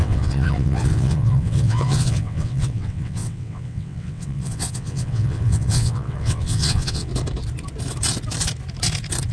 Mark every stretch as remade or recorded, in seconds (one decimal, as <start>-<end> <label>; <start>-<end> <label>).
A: 0.0-7.1 remade; 7.1-9.3 recorded